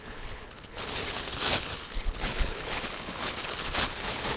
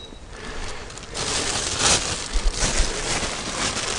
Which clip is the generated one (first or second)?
first